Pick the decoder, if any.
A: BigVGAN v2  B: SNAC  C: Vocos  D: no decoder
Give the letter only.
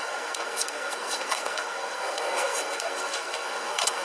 B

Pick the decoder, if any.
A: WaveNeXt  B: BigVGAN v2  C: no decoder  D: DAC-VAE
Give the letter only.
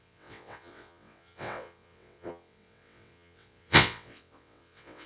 A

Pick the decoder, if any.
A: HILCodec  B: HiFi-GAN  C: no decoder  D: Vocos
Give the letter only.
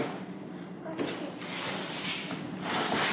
C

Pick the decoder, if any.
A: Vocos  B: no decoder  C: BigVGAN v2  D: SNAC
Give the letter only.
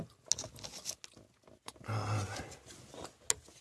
B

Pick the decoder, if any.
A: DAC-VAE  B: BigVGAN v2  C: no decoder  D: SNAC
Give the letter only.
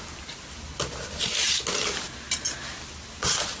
C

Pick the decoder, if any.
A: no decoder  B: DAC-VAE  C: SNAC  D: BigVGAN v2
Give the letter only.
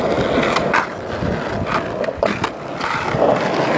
A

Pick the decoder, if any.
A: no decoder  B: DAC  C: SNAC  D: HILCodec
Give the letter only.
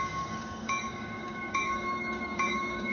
B